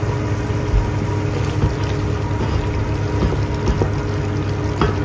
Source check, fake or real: real